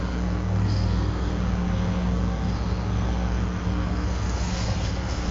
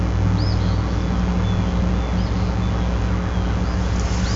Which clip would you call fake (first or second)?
first